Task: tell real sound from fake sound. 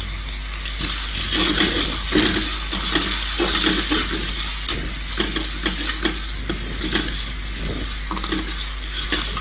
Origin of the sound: real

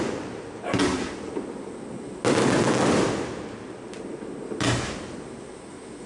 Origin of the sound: real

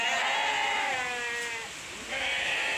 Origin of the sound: real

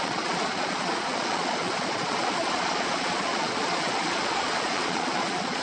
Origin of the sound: fake